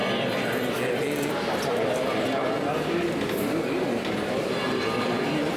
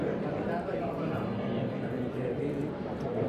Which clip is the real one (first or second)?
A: first